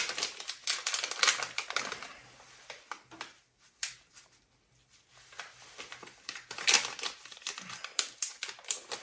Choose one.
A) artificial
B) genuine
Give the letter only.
B